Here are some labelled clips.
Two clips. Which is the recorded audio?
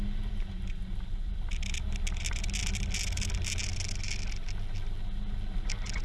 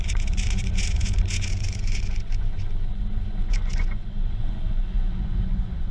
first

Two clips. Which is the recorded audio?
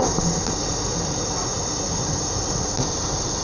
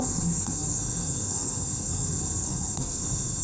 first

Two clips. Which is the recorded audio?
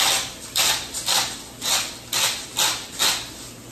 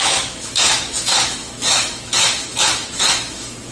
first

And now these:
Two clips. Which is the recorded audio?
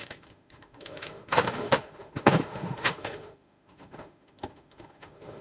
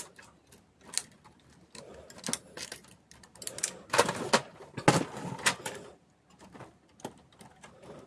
second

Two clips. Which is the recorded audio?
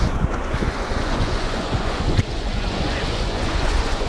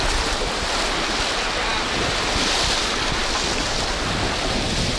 second